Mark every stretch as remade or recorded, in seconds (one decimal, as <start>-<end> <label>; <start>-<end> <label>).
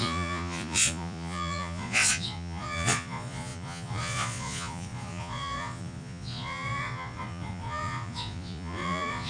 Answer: 0.0-9.3 remade